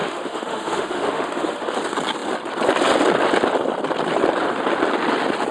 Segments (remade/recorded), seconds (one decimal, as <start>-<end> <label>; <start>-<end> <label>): 0.0-1.7 remade; 1.7-5.5 recorded